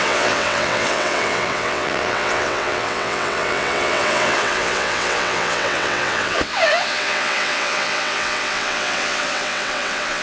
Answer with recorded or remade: remade